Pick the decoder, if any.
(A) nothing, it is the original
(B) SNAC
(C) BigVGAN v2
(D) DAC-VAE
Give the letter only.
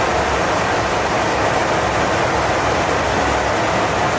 A